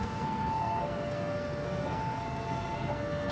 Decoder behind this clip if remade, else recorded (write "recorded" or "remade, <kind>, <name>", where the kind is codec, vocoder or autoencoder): remade, codec, SNAC